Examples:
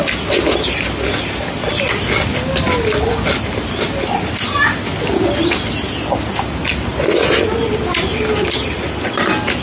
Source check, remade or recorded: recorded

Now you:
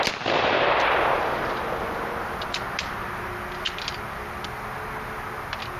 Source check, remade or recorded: recorded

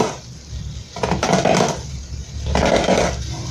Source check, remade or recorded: recorded